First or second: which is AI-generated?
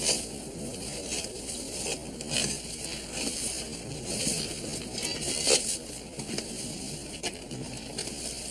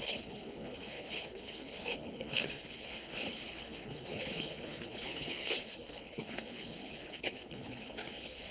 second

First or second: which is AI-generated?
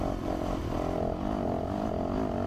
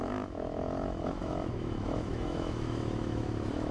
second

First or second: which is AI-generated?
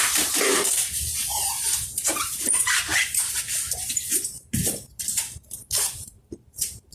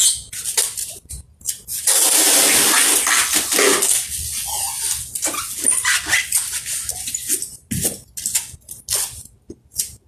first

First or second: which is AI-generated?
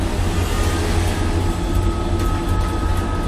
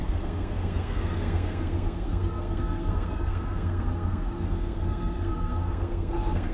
second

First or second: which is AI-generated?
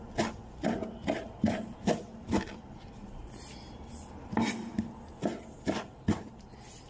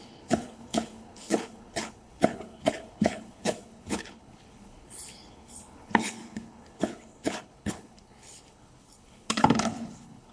second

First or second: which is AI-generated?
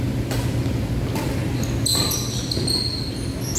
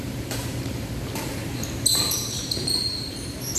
second